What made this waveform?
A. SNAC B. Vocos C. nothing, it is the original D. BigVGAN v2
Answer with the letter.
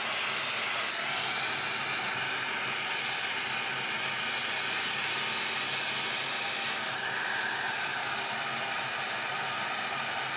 C